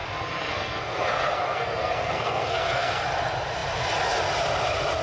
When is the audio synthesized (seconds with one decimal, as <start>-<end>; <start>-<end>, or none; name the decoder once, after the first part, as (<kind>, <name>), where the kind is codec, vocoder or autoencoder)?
0.0-3.0 (codec, SNAC)